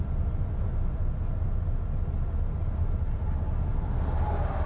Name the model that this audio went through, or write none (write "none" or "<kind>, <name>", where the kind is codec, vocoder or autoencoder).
none